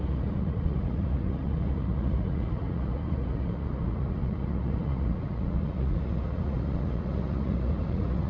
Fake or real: fake